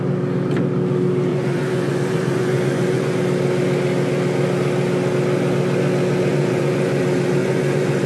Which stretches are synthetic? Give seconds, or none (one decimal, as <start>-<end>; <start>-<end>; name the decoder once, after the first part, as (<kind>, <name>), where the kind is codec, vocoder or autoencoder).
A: 1.3-3.2 (vocoder, Vocos); 6.3-7.0; 7.4-8.1